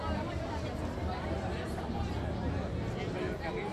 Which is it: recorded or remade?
recorded